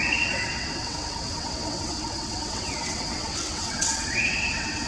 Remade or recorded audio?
remade